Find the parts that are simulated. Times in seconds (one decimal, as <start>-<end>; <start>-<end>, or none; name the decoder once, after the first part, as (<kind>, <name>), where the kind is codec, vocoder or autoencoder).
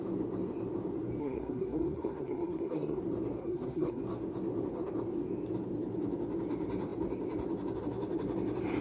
1.2-3.0 (codec, SNAC); 3.4-4.0